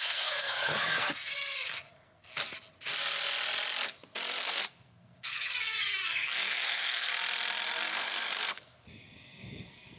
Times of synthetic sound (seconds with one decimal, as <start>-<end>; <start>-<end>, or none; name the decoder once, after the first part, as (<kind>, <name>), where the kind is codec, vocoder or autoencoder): 0.0-2.3 (codec, SNAC); 4.4-7.1; 7.9-10.0